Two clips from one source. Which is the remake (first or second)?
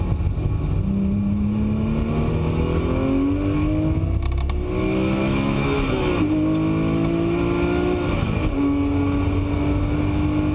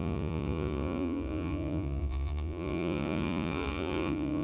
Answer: second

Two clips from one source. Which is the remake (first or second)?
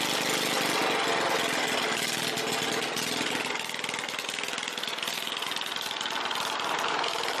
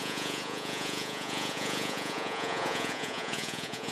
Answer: second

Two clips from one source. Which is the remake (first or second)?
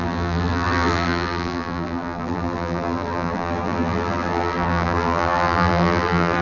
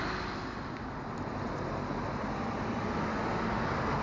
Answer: first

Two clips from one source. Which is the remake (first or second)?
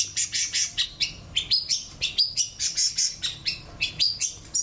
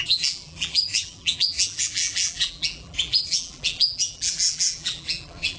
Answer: second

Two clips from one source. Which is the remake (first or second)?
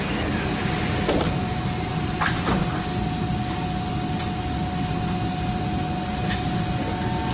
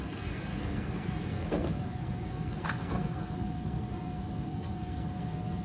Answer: second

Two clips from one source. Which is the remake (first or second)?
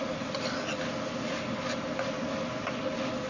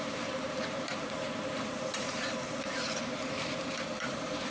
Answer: second